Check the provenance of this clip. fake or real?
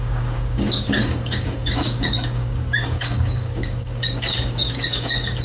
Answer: fake